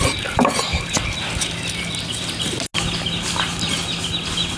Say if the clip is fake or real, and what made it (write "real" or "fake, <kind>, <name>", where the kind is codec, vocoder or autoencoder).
real